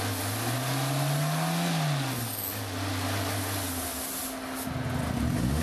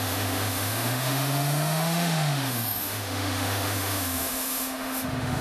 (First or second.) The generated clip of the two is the second